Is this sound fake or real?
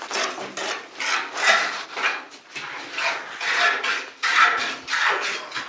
real